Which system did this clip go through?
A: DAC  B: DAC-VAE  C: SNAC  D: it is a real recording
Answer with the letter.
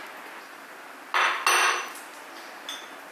D